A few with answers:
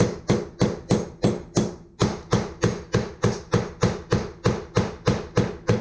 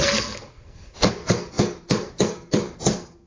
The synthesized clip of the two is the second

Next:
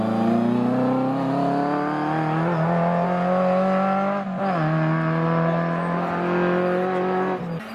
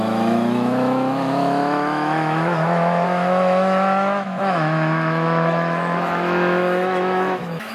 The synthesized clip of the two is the second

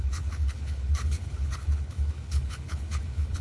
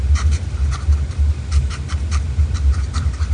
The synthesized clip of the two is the first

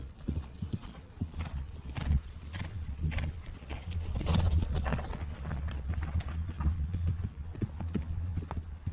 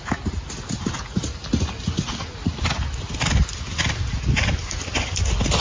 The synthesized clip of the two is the first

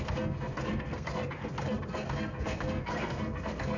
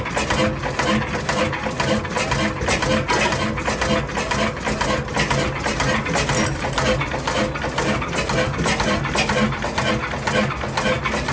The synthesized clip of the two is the first